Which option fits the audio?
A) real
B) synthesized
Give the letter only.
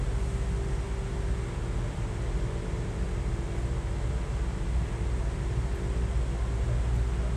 A